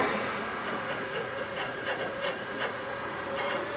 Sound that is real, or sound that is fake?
fake